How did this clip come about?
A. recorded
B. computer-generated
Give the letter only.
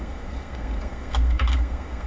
B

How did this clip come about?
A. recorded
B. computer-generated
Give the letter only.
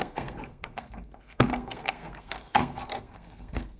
B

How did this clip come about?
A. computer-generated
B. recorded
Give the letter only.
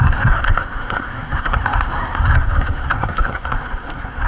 A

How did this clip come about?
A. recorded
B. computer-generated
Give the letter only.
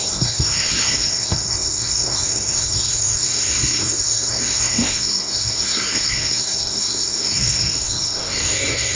B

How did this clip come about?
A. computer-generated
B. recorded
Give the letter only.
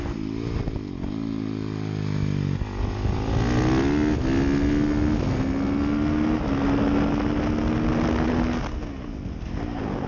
B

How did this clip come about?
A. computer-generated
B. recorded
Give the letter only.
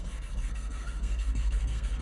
A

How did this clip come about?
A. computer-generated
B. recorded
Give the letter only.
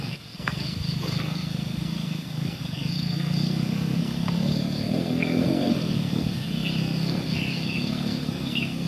A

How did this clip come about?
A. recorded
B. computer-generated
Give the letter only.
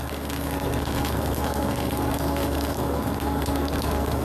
B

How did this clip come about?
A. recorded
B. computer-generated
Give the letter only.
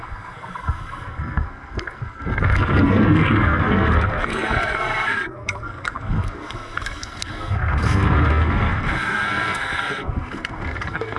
B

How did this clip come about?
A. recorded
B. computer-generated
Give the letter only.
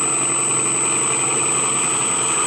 A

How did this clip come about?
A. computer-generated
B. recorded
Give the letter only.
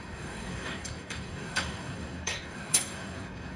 A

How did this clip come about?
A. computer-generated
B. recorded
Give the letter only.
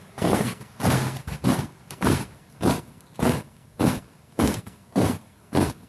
A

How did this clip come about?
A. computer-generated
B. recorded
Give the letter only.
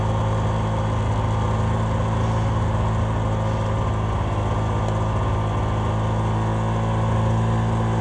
B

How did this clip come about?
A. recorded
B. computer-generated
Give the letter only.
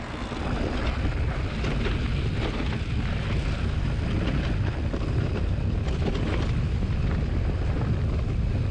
A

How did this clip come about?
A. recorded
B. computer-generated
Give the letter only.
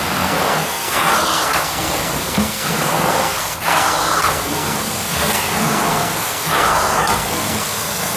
B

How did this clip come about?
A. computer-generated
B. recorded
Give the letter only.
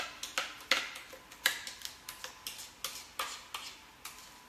B